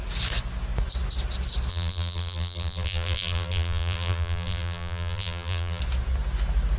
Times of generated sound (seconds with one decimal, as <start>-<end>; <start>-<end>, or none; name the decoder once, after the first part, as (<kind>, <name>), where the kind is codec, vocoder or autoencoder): 1.7-5.8 (vocoder, BigVGAN v2)